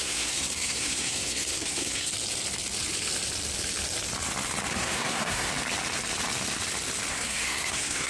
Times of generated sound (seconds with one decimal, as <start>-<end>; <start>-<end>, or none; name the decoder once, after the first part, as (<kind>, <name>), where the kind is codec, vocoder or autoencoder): 0.0-2.1 (codec, SNAC); 4.7-5.5; 7.1-8.1